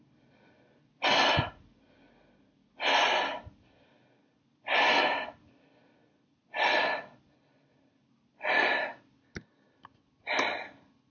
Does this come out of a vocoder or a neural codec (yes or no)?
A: no